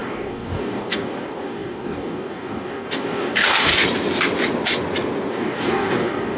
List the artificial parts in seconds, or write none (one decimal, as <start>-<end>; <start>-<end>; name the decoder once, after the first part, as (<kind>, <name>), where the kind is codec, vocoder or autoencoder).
0.0-3.7 (codec, DAC); 5.3-6.4